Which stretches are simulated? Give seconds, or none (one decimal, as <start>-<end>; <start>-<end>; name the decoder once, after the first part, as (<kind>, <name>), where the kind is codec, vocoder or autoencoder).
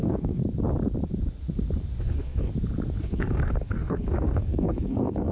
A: 0.0-0.4 (codec, SNAC); 2.0-2.5; 3.0-5.3